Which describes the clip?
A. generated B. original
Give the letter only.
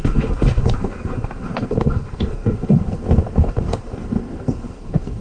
A